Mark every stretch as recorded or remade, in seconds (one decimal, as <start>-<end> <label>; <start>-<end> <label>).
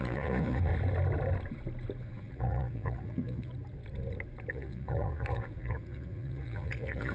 0.0-0.7 remade; 0.7-2.0 recorded; 2.0-3.5 remade; 3.5-4.5 recorded; 4.5-7.1 remade